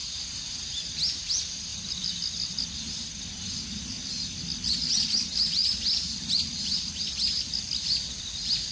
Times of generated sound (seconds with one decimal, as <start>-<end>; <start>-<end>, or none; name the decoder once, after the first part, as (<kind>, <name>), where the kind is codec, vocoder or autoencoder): 0.9-5.6 (vocoder, BigVGAN v2); 6.1-8.7